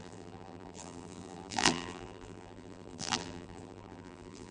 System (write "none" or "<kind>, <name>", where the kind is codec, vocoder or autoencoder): vocoder, BigVGAN v2